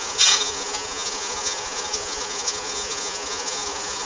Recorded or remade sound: remade